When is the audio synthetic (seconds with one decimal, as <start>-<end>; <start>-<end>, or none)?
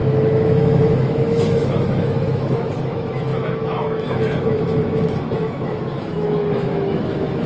0.0-7.5